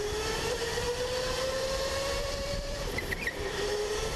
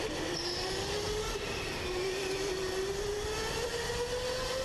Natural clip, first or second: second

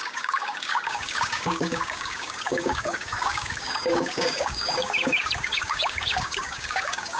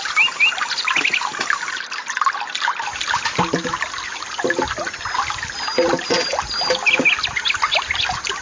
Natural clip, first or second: second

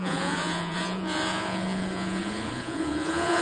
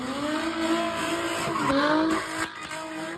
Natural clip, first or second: second